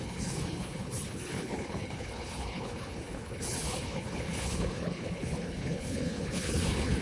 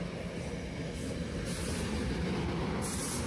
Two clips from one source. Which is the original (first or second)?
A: second